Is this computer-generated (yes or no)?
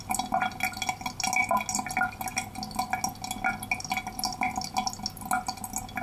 no